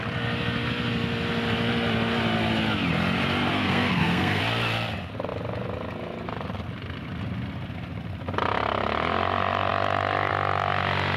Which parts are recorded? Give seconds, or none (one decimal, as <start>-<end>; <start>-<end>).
0.0-3.5; 4.4-11.2